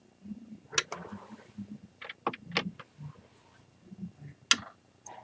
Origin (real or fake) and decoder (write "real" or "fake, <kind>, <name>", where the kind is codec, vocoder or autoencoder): real